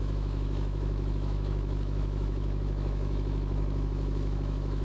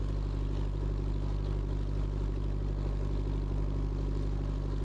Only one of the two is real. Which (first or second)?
second